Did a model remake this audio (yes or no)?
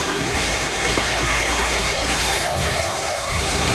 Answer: yes